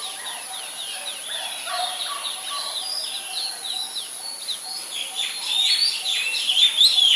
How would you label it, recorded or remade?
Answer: recorded